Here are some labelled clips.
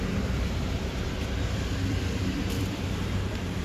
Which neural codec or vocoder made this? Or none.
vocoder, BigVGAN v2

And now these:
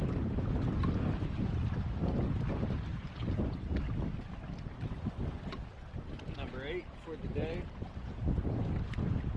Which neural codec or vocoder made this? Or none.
none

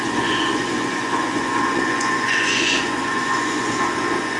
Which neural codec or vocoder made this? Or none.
vocoder, Vocos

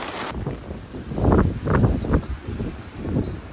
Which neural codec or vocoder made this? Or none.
none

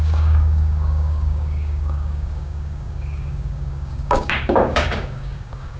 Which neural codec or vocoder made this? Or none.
codec, DAC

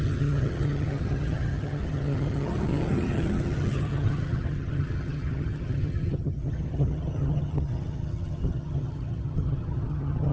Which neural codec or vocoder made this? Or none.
vocoder, HiFi-GAN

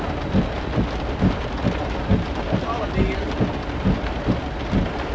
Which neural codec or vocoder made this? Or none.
none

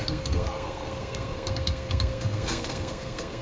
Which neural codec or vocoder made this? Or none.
codec, SNAC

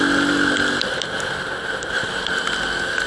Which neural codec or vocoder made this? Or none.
none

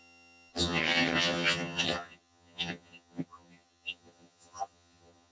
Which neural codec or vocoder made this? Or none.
vocoder, HiFi-GAN